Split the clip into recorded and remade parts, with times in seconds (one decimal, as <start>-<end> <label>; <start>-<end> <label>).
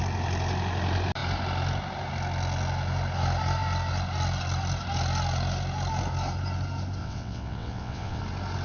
0.0-7.0 recorded; 7.0-8.2 remade; 8.2-8.6 recorded